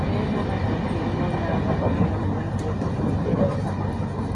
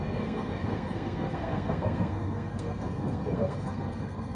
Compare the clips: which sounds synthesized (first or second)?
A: second